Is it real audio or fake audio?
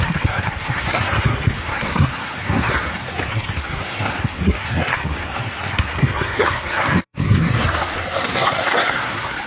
fake